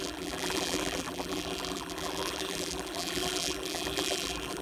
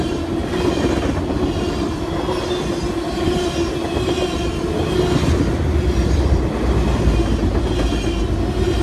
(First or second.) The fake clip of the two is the first